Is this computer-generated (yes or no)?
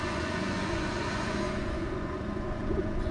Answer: yes